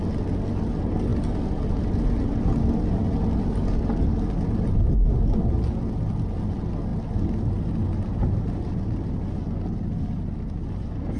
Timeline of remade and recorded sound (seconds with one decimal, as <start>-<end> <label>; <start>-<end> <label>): 0.0-11.2 recorded